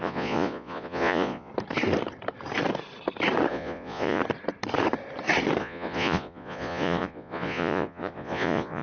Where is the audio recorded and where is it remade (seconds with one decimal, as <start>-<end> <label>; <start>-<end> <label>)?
0.0-1.5 remade; 1.5-3.5 recorded; 3.5-4.2 remade; 4.2-5.6 recorded; 5.6-8.8 remade